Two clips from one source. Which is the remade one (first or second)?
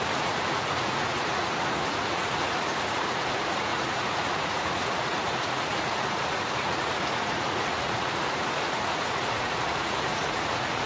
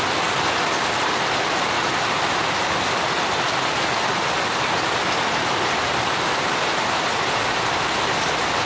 first